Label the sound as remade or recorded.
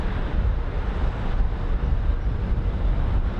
recorded